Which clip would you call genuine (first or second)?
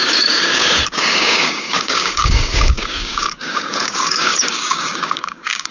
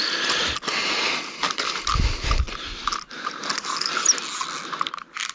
second